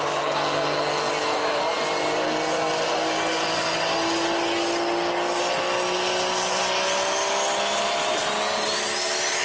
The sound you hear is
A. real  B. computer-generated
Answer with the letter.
A